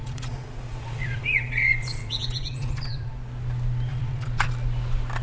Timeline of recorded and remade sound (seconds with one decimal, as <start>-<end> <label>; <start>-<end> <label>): 0.0-3.1 remade; 3.1-3.9 recorded; 3.9-4.5 remade; 4.5-5.2 recorded